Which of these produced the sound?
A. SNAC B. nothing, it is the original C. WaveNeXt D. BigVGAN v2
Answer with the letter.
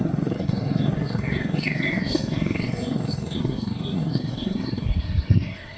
A